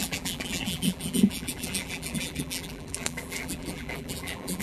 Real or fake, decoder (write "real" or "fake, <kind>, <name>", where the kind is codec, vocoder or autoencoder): fake, vocoder, BigVGAN v2